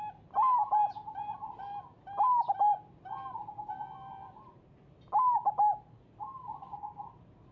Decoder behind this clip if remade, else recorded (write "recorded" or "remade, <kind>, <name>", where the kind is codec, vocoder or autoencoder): recorded